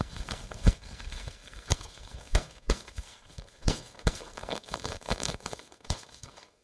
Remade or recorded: remade